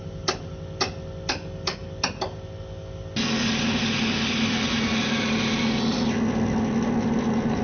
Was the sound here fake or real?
real